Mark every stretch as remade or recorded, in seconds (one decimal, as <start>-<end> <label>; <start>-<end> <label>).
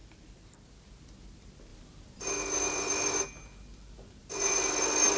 0.0-5.2 recorded